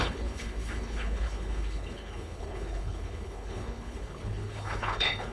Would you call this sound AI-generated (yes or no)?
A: yes